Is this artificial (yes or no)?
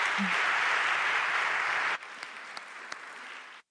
no